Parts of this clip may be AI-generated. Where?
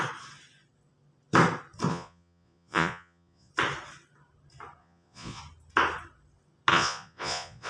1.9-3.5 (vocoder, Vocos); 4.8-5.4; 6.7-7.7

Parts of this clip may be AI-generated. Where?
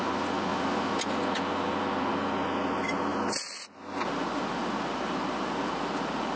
none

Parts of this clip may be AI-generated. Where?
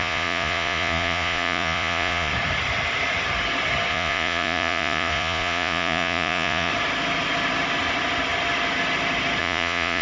0.0-2.3 (vocoder, Vocos); 3.9-6.7; 9.4-10.0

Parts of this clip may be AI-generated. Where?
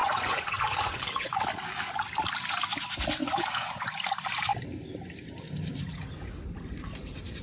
0.0-1.3 (vocoder, Vocos); 3.2-3.9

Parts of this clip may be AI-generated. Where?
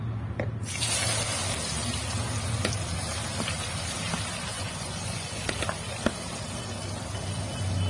4.5-5.4 (vocoder, Vocos)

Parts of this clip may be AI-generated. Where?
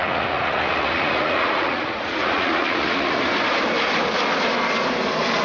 0.0-3.2 (vocoder, Vocos)